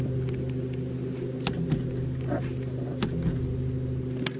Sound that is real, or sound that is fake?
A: real